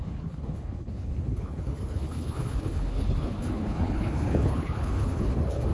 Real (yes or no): no